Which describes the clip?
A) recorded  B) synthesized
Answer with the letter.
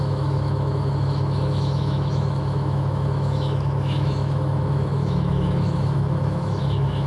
B